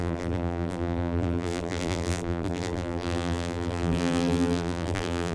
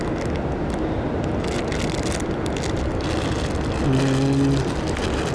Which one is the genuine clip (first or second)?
second